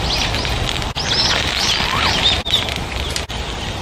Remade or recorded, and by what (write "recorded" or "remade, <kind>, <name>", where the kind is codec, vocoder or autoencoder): recorded